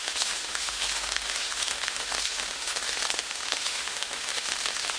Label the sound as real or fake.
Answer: fake